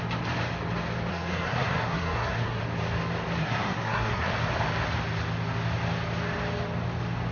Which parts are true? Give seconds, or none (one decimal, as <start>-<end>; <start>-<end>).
0.0-1.1; 2.6-3.4; 4.3-7.3